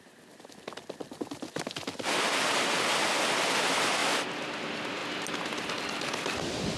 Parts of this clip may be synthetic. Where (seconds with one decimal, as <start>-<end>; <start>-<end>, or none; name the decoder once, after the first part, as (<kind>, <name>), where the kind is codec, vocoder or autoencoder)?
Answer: none